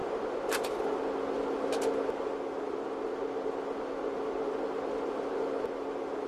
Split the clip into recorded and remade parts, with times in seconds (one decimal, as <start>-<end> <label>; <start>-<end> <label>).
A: 0.0-6.3 recorded